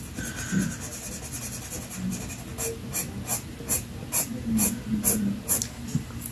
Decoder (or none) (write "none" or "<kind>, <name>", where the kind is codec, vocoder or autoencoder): none